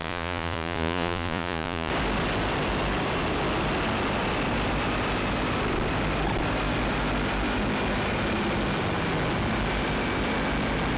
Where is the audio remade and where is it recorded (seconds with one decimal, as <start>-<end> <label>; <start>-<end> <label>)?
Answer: 0.0-1.9 remade; 1.9-11.0 recorded